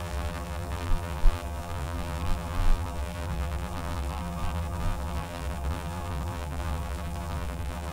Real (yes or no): no